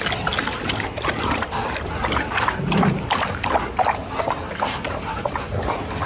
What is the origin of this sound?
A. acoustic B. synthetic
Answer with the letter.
A